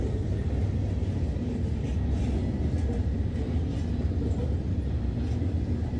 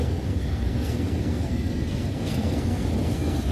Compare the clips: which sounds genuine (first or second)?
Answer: first